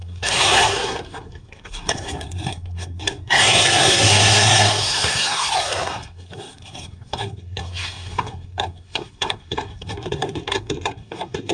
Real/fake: fake